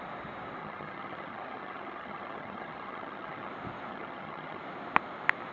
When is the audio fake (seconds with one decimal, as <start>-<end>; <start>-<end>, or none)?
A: 0.6-3.5; 3.9-4.6